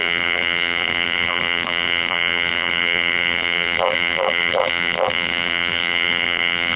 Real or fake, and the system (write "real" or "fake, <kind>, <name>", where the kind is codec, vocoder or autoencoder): fake, vocoder, BigVGAN v2